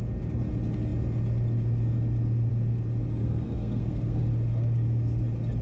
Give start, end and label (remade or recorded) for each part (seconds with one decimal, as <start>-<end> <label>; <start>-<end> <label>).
0.0-3.2 recorded; 3.2-4.2 remade; 4.2-5.6 recorded